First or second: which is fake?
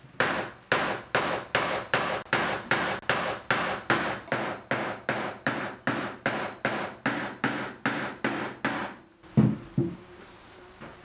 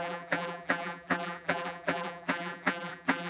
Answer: second